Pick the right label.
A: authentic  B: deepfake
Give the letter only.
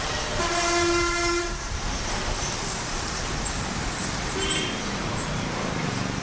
B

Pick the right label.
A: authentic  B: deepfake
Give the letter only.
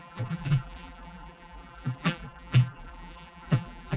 B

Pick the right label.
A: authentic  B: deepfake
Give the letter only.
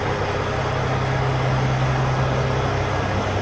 A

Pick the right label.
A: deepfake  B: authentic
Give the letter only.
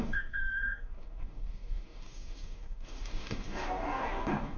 A